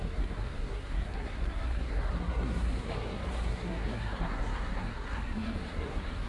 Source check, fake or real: fake